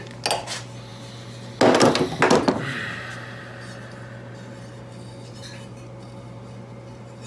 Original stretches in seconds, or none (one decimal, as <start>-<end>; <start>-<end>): 0.0-7.3